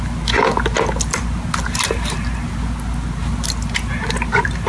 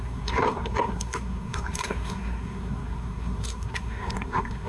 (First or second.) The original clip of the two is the first